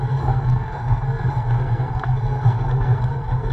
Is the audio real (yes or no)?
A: no